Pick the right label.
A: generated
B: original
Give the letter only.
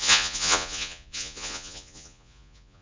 A